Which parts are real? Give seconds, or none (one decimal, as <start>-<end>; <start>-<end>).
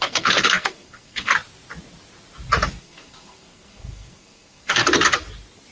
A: 1.3-2.8; 4.8-5.7